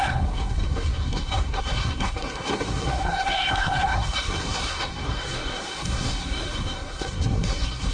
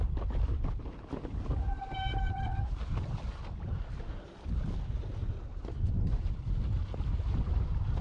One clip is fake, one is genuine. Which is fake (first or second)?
first